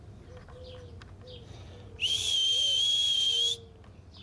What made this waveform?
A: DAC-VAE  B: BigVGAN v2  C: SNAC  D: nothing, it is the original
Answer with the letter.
D